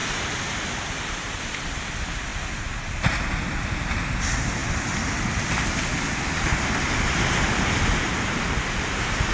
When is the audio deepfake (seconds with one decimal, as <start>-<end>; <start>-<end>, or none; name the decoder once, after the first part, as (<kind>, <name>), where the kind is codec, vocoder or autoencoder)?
none